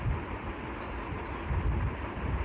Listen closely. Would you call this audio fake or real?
real